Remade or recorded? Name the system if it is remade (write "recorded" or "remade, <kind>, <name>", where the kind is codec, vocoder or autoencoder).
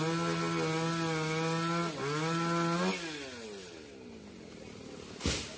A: recorded